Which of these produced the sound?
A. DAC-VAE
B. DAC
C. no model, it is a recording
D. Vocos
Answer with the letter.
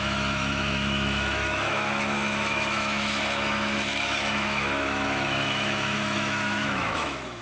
A